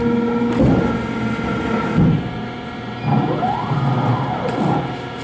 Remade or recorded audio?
recorded